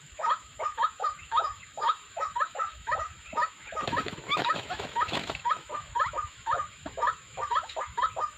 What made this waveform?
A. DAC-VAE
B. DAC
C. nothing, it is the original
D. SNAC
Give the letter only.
A